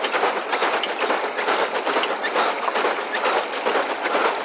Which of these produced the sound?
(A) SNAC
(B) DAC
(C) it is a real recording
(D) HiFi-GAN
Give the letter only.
C